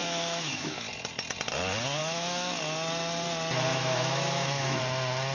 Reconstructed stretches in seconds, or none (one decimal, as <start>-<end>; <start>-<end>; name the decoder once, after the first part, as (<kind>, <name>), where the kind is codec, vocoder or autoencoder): 0.0-0.9 (autoencoder, DAC-VAE); 2.0-2.6; 3.7-4.8